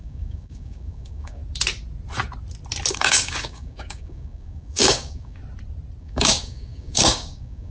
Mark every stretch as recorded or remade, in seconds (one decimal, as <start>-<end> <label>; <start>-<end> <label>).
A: 0.0-1.4 remade; 1.4-2.9 recorded; 2.9-5.4 remade; 5.4-6.0 recorded; 6.0-7.7 remade

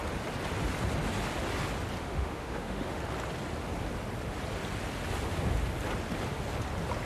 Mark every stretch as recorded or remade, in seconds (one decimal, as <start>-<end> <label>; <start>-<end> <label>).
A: 0.0-2.0 recorded; 2.0-3.0 remade; 3.0-7.1 recorded

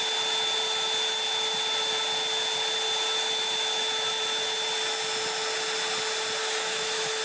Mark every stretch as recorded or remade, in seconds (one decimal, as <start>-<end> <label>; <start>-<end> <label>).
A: 0.0-6.4 recorded; 6.4-7.2 remade

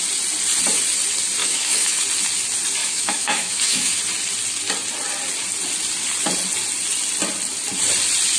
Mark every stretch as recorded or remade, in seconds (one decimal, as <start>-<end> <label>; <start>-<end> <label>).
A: 0.0-1.4 recorded; 1.4-2.0 remade; 2.0-2.8 recorded; 2.8-4.0 remade; 4.0-8.4 recorded

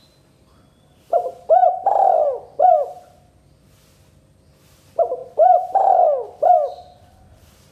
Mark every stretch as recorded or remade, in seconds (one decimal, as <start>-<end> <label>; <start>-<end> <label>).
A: 0.0-7.7 recorded